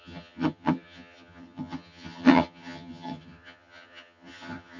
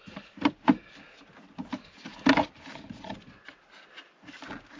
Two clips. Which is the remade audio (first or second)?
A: first